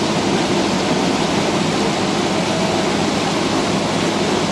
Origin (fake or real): real